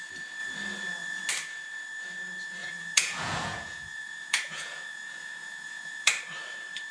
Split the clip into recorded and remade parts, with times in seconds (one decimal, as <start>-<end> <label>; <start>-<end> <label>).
0.0-2.6 recorded; 2.6-6.1 remade; 6.1-6.9 recorded